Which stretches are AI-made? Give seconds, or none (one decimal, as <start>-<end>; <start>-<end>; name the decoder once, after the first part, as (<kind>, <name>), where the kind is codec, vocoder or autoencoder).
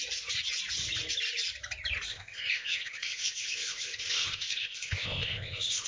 2.1-5.9 (codec, ZipCodec)